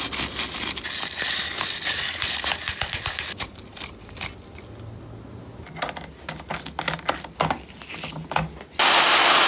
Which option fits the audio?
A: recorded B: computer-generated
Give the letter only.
A